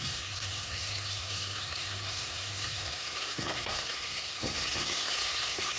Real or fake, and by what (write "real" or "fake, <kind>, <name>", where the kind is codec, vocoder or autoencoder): fake, codec, SNAC